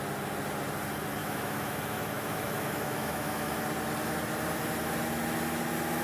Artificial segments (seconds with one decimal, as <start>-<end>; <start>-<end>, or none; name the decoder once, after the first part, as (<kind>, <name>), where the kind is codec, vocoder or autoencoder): 1.2-3.6 (autoencoder, DAC-VAE)